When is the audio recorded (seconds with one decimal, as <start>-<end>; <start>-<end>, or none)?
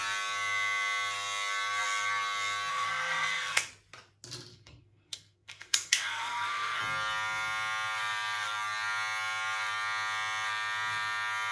0.0-2.7; 3.7-4.5; 6.8-11.5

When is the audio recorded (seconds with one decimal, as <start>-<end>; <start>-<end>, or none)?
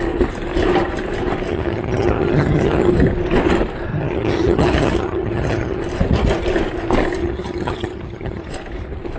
0.0-1.5; 2.9-3.9; 5.8-7.2; 8.5-9.2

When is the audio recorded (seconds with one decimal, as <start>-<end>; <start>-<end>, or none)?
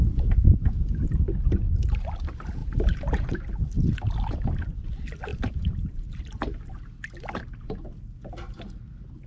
0.0-2.6; 3.4-5.3; 6.2-9.3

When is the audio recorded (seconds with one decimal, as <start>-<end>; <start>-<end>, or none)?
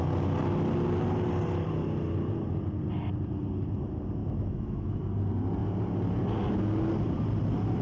0.0-4.2; 5.0-7.8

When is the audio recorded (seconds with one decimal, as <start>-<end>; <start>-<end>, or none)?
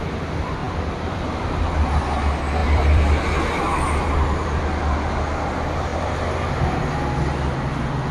0.0-0.6; 1.4-2.6; 4.9-5.9; 6.8-8.1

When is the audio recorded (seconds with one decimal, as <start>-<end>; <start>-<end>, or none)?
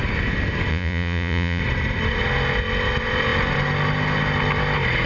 0.0-0.7; 1.6-5.1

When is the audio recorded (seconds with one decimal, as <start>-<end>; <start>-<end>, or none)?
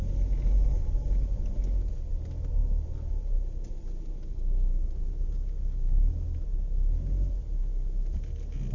0.0-8.7